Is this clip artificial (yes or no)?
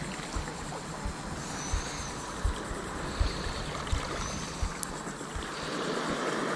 no